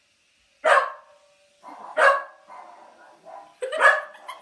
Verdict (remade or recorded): recorded